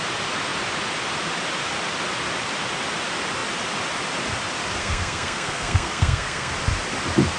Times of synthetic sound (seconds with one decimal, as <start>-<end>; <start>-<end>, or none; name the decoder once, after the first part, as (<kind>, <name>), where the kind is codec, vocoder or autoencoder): 4.8-6.5 (codec, SNAC)